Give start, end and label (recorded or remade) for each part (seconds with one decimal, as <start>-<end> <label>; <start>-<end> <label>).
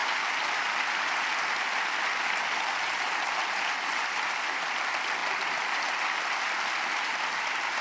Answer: 0.0-7.8 recorded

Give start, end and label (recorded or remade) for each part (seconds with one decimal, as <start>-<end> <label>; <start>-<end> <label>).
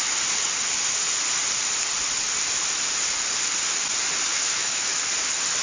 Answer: 0.0-4.3 recorded; 4.3-5.0 remade; 5.0-5.6 recorded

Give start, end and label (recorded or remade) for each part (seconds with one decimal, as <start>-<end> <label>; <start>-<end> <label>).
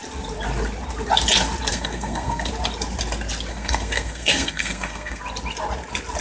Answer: 0.0-1.7 recorded; 1.7-2.5 remade; 2.5-3.5 recorded; 3.5-5.2 remade; 5.2-6.2 recorded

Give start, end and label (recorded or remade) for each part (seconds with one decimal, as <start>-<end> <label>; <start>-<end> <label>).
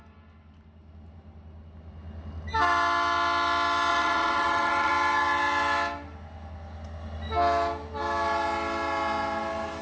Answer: 0.0-3.9 recorded; 3.9-4.9 remade; 4.9-9.8 recorded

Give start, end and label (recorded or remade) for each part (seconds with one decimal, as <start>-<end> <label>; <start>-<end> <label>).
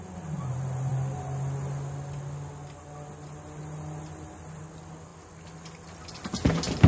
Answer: 0.0-6.9 recorded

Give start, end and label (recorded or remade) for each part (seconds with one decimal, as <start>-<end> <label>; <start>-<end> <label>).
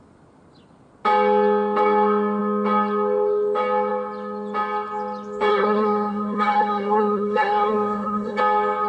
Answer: 0.0-5.5 recorded; 5.5-8.4 remade; 8.4-8.9 recorded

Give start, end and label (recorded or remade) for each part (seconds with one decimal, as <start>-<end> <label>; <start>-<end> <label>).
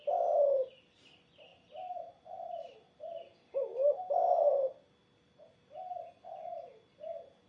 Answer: 0.0-7.5 recorded